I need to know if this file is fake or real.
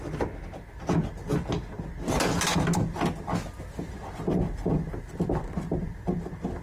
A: real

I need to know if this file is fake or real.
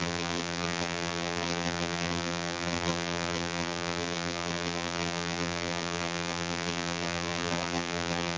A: fake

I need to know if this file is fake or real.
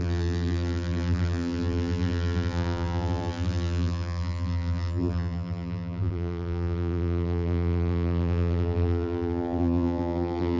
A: fake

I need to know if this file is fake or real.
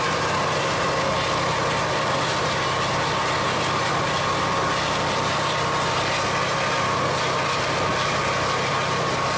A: real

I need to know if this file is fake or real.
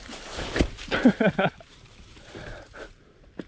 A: fake